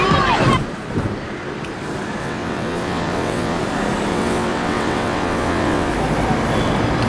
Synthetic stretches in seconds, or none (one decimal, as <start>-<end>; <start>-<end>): 2.2-3.6; 4.1-5.9